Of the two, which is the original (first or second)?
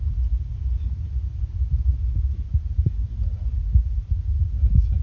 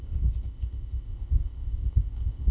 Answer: first